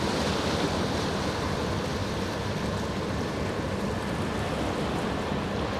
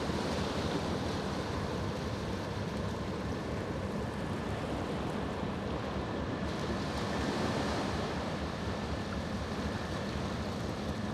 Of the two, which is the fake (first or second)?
second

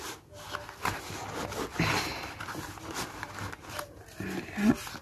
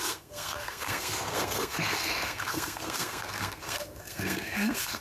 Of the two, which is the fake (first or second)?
second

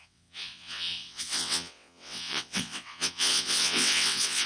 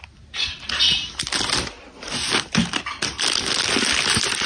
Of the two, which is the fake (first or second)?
first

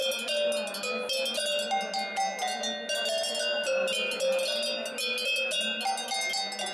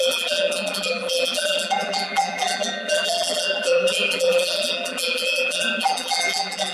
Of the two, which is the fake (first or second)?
second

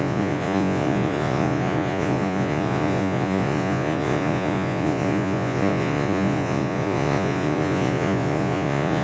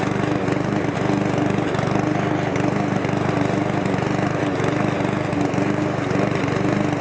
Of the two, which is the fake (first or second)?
first